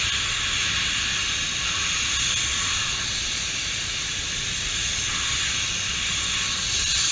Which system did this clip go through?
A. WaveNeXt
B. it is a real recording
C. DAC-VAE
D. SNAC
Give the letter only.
B